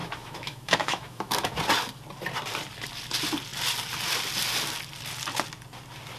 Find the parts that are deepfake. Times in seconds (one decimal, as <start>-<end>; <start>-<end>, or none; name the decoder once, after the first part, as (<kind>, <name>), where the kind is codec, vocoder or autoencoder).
0.0-1.6 (autoencoder, DAC-VAE)